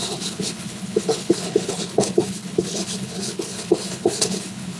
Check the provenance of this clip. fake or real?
fake